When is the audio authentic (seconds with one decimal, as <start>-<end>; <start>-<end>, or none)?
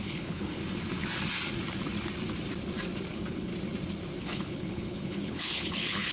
0.6-3.1; 3.5-4.2